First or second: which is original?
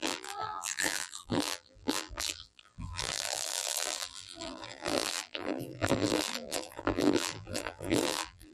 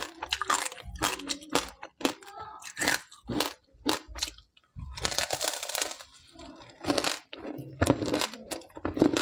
second